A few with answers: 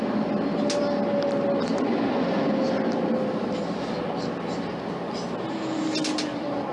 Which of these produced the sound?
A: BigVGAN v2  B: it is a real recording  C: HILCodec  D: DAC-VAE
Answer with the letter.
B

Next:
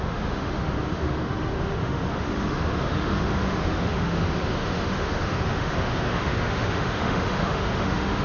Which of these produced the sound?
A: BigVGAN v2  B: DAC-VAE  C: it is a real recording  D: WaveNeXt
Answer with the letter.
B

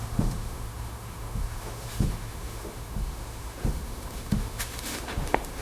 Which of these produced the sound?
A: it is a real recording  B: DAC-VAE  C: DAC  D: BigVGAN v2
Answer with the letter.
B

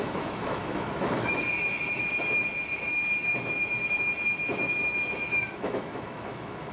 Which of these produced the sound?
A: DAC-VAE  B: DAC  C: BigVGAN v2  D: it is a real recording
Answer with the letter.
A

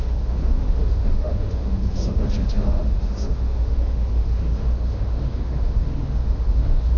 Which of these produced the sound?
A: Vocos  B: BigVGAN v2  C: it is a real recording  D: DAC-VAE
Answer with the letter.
D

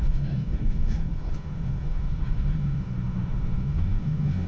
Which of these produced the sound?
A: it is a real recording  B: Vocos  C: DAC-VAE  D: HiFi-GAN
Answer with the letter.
C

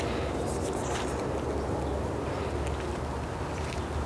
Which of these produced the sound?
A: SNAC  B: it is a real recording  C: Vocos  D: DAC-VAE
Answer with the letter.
B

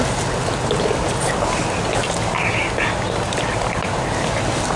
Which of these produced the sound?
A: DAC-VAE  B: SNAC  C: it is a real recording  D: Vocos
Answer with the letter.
C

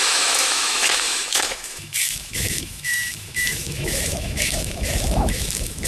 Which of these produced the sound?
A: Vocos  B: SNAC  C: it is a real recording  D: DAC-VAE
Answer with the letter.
D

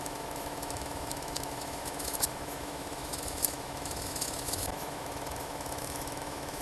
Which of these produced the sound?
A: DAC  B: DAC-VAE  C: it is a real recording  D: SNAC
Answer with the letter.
B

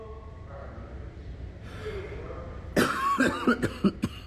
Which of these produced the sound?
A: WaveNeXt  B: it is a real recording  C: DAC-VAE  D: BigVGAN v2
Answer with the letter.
B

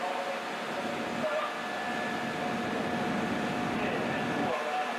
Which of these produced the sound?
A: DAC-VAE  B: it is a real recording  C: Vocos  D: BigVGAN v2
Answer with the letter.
B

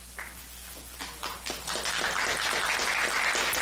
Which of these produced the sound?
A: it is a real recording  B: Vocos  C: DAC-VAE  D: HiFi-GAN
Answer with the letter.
A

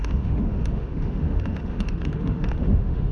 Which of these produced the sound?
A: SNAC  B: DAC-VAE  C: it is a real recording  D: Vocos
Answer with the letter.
B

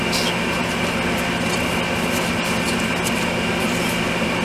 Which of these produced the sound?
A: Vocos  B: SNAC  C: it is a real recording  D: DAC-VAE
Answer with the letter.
C